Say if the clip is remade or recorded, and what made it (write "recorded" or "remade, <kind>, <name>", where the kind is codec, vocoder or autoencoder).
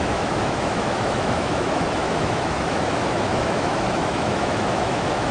remade, autoencoder, DAC-VAE